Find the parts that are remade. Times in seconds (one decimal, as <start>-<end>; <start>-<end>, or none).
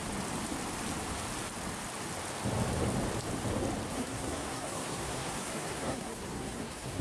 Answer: 3.9-7.0